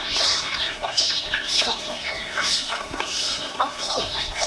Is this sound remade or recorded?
remade